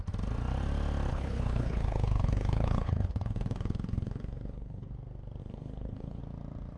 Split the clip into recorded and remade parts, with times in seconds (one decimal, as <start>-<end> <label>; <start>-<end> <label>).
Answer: 0.0-1.1 recorded; 1.1-4.9 remade; 4.9-5.4 recorded; 5.4-6.2 remade; 6.2-6.8 recorded